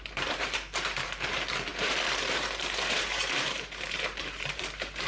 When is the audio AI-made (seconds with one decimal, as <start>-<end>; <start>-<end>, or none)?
0.0-5.1